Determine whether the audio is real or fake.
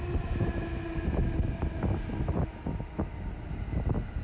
real